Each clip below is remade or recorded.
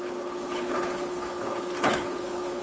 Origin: remade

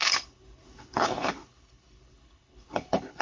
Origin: remade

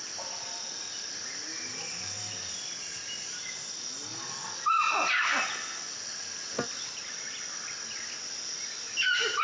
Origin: recorded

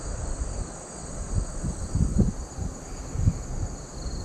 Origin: recorded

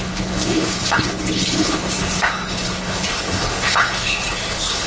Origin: remade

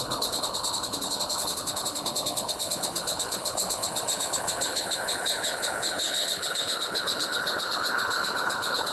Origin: remade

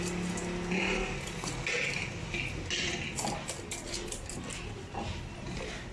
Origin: recorded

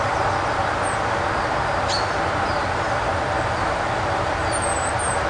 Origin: recorded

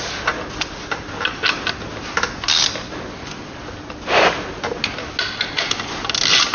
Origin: recorded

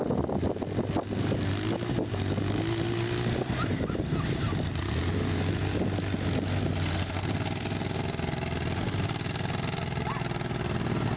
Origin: recorded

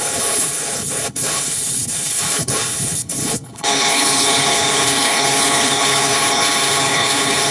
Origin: remade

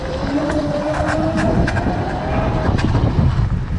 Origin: recorded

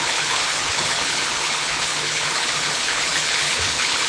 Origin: remade